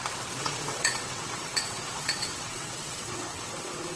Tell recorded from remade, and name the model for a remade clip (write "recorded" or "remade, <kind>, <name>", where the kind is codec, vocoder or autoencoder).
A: remade, vocoder, WaveNeXt